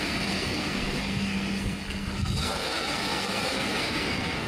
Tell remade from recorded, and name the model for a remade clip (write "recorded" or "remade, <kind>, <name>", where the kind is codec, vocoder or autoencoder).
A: remade, codec, SNAC